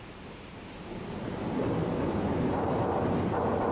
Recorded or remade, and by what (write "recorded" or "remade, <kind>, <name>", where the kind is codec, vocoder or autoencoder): remade, vocoder, BigVGAN v2